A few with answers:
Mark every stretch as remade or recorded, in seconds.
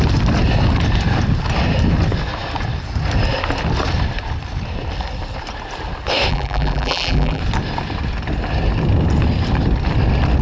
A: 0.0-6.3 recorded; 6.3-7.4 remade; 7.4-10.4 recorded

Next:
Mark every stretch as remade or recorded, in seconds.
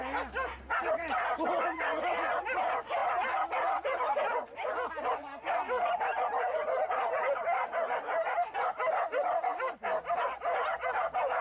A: 0.0-11.4 recorded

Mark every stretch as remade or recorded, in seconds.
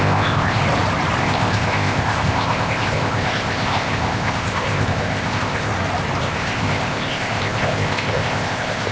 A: 0.0-0.6 remade; 0.6-1.2 recorded; 1.2-5.7 remade; 5.7-6.2 recorded; 6.2-8.9 remade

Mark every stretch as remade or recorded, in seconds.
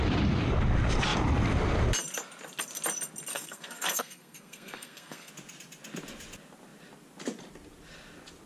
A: 0.0-3.3 recorded; 3.3-5.3 remade; 5.3-8.5 recorded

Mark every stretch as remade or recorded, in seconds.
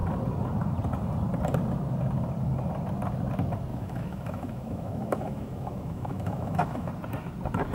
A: 0.0-3.7 recorded; 3.7-6.9 remade; 6.9-7.7 recorded